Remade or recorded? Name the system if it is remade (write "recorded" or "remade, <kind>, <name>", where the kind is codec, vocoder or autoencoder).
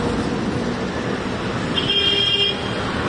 recorded